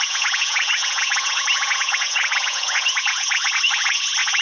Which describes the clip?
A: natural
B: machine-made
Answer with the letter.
B